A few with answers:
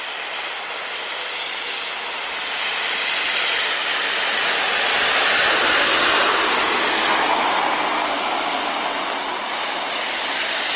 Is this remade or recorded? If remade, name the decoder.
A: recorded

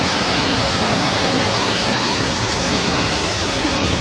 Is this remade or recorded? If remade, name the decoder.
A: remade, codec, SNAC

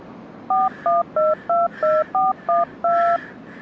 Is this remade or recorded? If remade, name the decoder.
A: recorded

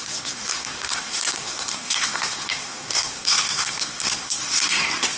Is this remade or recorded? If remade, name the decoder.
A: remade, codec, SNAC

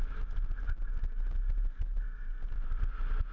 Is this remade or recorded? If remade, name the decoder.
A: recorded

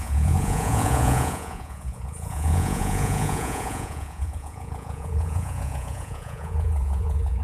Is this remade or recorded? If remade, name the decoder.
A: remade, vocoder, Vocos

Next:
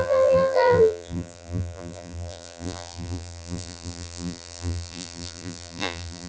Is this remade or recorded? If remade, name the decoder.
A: remade, vocoder, BigVGAN v2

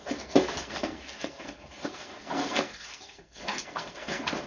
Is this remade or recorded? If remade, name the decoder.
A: remade, codec, SNAC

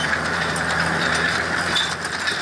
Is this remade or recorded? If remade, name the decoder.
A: remade, vocoder, BigVGAN v2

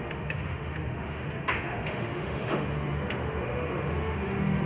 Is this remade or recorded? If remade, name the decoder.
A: remade, autoencoder, DAC-VAE